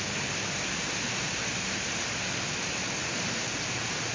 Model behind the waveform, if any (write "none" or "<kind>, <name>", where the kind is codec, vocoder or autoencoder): none